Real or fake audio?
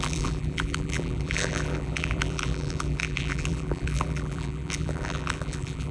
fake